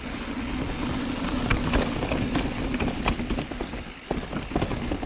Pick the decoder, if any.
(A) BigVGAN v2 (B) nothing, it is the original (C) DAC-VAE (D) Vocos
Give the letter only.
B